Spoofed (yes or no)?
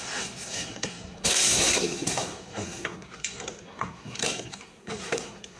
yes